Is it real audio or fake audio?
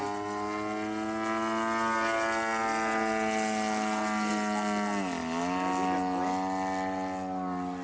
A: real